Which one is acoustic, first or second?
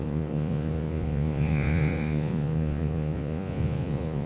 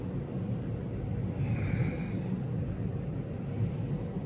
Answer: second